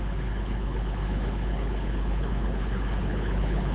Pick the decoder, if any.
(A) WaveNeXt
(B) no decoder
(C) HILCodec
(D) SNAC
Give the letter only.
C